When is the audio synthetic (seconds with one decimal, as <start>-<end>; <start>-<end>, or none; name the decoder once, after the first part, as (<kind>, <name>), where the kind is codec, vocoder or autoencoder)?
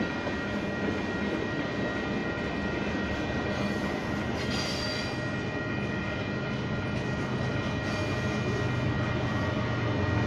none